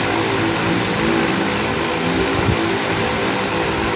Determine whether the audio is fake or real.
real